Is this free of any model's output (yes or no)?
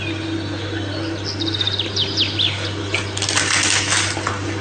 yes